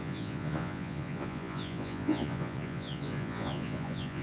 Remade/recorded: remade